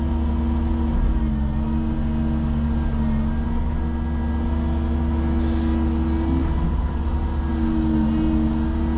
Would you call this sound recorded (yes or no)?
yes